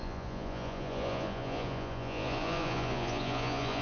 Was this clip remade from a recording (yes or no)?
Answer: yes